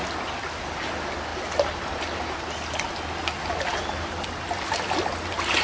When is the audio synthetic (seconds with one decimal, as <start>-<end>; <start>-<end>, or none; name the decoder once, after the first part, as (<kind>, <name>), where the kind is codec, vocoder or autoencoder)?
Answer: 0.0-0.6 (vocoder, BigVGAN v2)